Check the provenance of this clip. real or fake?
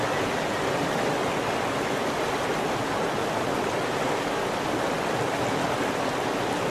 real